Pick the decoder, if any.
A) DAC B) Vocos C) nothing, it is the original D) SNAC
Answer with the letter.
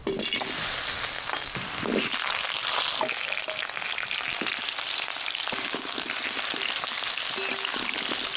C